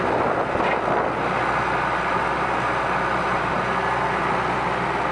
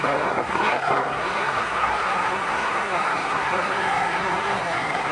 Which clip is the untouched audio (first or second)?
first